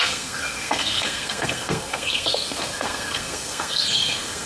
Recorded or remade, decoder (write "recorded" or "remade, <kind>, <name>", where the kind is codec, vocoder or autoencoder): remade, codec, SNAC